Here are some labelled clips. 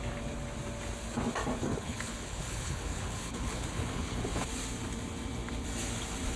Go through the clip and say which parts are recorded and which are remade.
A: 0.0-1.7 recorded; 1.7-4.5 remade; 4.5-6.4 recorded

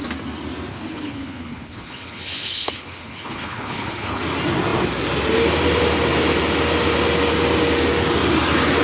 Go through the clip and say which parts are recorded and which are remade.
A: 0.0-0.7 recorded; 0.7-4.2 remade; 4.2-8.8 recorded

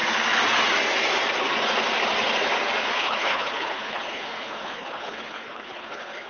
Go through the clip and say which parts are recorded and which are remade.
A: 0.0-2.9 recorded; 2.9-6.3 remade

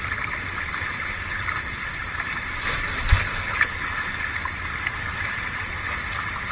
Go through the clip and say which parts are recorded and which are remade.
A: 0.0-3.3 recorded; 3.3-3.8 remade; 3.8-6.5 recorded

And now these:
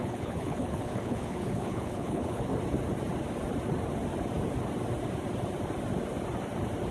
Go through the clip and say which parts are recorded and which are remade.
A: 0.0-2.5 remade; 2.5-6.9 recorded

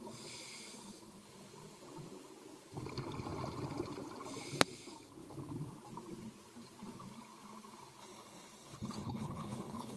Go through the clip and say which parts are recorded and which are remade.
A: 0.0-8.0 recorded; 8.0-10.0 remade

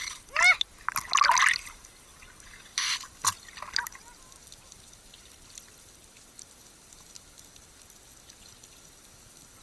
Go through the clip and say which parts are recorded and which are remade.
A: 0.0-9.6 recorded

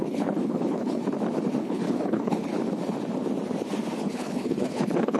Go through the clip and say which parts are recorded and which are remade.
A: 0.0-1.0 remade; 1.0-1.6 recorded; 1.6-2.5 remade; 2.5-4.0 recorded; 4.0-5.2 remade